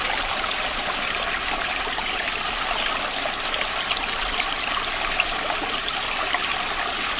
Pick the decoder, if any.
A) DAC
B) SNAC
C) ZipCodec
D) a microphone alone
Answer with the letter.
D